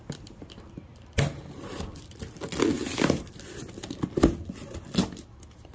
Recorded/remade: recorded